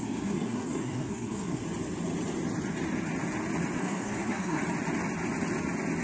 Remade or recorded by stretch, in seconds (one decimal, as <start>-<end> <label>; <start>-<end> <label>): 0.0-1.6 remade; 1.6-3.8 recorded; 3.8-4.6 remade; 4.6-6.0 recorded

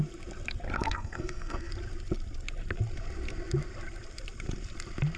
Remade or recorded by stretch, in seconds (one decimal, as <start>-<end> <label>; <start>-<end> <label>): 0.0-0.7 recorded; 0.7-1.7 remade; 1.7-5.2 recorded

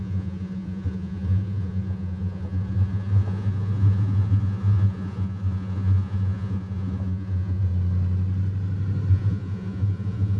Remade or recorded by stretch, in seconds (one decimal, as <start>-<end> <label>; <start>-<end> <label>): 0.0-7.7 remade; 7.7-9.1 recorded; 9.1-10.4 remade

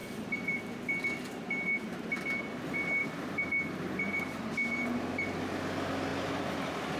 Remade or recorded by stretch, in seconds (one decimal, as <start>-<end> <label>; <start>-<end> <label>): 0.0-0.6 remade; 0.6-3.0 recorded; 3.0-4.2 remade; 4.2-7.0 recorded

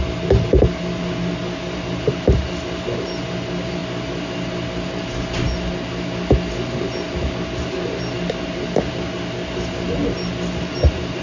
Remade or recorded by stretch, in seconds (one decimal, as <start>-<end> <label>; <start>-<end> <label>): 0.0-11.2 recorded